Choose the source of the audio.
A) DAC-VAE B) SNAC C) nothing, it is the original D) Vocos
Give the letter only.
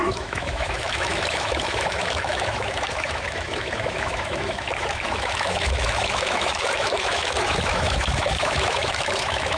A